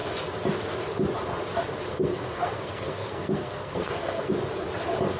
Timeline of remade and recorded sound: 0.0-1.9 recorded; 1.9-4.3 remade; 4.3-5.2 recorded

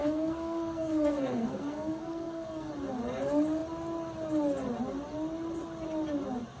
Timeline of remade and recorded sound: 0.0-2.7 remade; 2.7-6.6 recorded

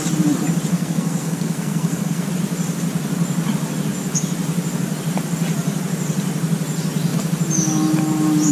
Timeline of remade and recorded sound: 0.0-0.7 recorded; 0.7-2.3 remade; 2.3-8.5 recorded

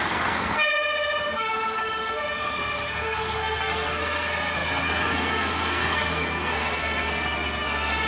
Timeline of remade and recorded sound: 0.0-8.1 remade

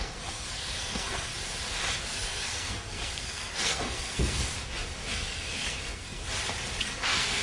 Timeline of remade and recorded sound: 0.0-1.3 remade; 1.3-2.0 recorded; 2.0-4.5 remade; 4.5-5.1 recorded; 5.1-6.2 remade; 6.2-6.8 recorded; 6.8-7.4 remade